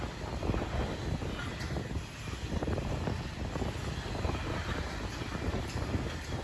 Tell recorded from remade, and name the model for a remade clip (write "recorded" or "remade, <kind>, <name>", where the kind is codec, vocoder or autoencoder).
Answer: recorded